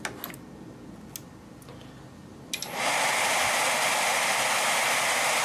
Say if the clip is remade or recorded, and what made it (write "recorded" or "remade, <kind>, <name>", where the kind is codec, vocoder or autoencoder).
recorded